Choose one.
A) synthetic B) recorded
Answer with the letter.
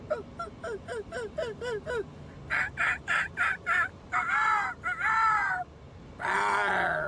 B